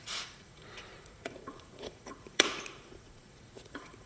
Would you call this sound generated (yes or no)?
yes